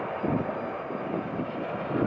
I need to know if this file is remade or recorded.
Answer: recorded